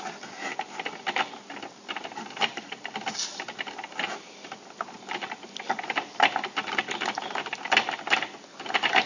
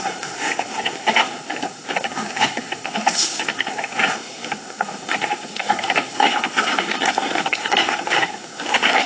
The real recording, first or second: first